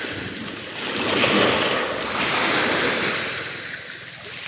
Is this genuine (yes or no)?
yes